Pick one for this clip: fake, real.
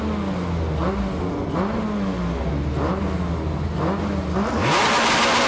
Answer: real